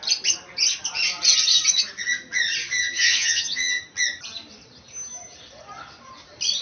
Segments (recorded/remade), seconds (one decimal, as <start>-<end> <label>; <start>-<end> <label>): 0.0-2.8 recorded; 2.8-3.8 remade; 3.8-6.6 recorded